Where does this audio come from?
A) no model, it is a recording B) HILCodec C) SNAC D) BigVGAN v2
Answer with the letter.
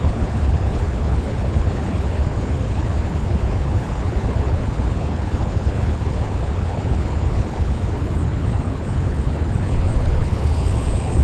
B